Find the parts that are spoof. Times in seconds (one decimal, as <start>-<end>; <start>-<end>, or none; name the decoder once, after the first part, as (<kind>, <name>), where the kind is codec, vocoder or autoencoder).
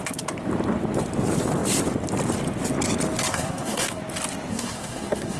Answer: 3.3-4.0 (codec, SNAC); 4.5-5.4